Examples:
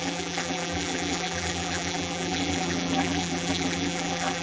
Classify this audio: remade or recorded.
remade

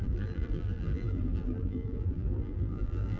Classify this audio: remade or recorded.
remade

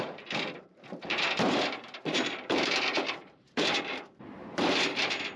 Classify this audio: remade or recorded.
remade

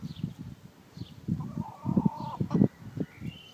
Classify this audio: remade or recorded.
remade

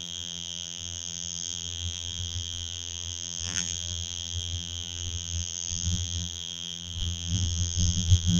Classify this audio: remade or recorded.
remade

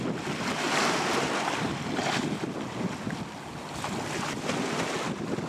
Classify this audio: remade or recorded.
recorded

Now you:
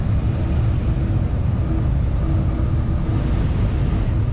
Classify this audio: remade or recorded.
recorded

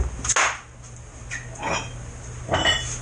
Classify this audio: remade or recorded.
recorded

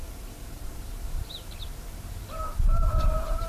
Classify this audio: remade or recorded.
remade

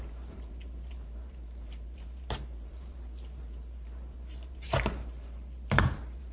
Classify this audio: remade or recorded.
remade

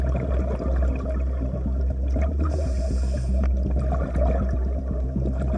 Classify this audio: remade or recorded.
recorded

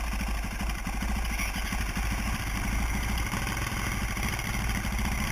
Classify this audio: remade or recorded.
recorded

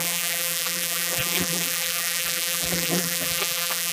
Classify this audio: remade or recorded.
remade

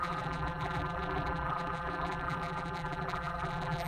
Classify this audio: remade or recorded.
remade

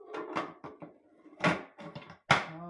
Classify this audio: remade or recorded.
recorded